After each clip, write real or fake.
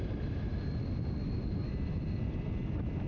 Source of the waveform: real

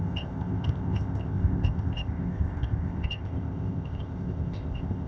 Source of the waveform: fake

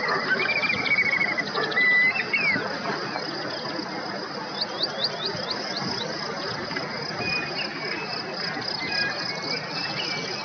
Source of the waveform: real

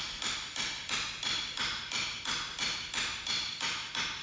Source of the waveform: real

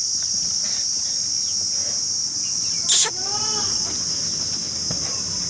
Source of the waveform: real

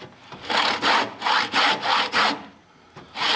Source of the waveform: real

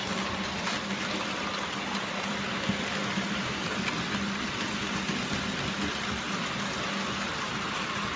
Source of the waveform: real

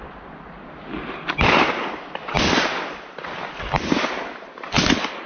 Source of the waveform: real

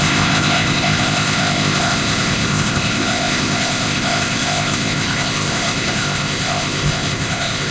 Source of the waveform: fake